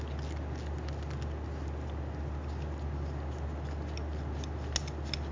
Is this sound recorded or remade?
recorded